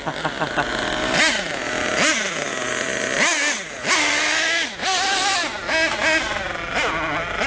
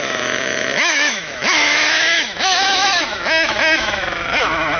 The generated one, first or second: second